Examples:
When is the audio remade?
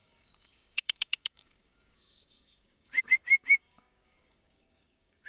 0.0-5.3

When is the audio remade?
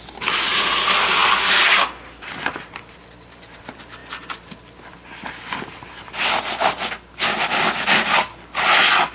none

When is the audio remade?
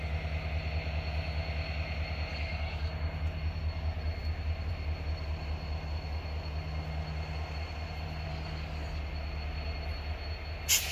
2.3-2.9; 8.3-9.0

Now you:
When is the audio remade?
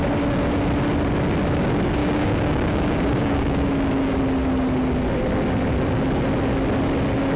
2.0-4.2